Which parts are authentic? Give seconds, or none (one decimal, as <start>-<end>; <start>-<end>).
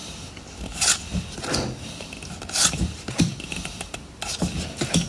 0.0-5.1